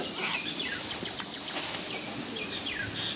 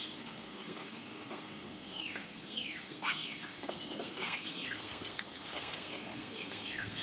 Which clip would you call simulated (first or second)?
second